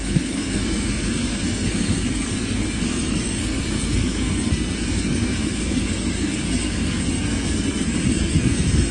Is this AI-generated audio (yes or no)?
yes